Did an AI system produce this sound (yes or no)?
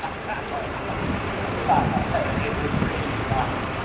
no